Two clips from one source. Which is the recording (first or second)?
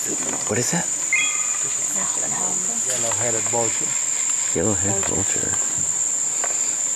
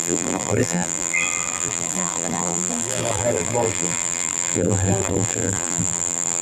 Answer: first